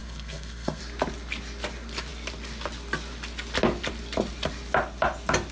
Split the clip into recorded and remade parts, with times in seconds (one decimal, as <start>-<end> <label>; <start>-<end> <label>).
0.0-0.8 remade; 0.8-5.5 recorded